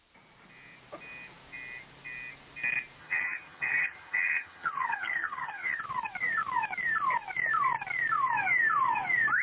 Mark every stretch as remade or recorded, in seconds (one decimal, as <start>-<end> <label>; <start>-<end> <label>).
0.0-3.0 recorded; 3.0-5.8 remade; 5.8-9.4 recorded